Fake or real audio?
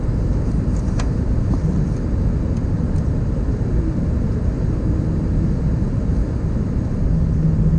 real